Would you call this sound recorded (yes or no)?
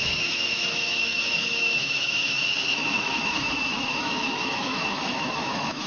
no